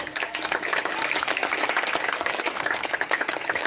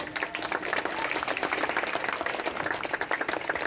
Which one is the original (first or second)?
second